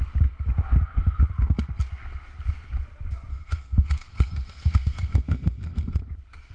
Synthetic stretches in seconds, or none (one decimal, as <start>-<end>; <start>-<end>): 3.3-6.0